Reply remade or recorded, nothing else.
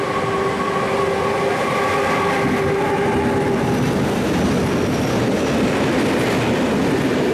recorded